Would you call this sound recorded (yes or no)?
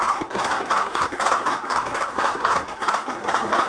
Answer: no